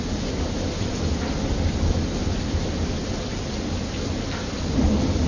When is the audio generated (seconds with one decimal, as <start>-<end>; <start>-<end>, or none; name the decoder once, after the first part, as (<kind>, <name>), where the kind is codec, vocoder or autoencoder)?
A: 2.2-4.8 (vocoder, BigVGAN v2)